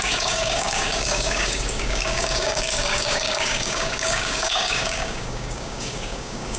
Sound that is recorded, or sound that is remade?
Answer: remade